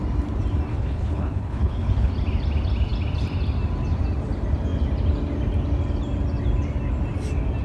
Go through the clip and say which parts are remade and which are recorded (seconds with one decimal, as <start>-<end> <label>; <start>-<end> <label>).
0.0-0.7 recorded; 0.7-2.1 remade; 2.1-7.6 recorded